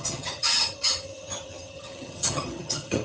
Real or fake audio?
fake